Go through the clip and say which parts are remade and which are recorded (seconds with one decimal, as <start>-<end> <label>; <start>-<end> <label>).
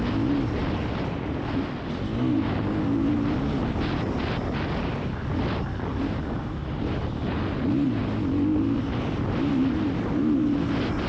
0.0-11.1 recorded